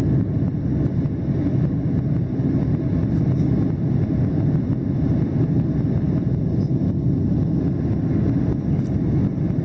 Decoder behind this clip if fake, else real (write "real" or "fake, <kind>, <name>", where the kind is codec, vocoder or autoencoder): real